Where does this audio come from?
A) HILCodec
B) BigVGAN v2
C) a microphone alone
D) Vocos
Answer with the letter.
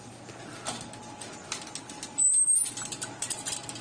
C